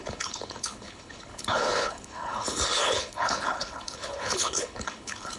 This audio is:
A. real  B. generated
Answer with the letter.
B